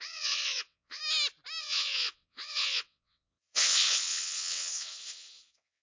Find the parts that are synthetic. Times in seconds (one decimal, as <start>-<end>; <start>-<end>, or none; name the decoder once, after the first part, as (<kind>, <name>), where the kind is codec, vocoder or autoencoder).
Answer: 0.0-1.0 (vocoder, WaveNeXt); 1.6-5.8